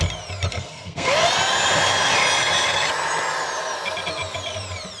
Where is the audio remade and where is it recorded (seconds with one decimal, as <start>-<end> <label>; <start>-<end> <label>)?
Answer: 0.0-0.5 recorded; 0.5-1.1 remade; 1.1-5.0 recorded